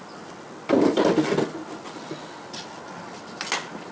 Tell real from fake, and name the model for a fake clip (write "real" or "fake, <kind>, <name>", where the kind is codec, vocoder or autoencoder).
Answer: real